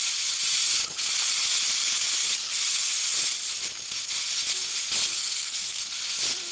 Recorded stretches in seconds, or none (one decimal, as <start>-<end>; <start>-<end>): 0.0-5.1; 5.8-6.5